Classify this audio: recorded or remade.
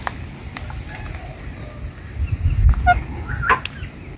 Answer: recorded